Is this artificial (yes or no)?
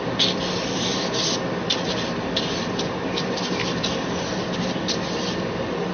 no